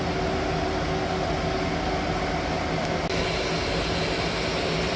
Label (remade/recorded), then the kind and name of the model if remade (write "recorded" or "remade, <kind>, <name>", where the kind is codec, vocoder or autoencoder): recorded